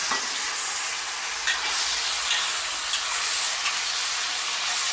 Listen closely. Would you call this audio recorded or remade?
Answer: recorded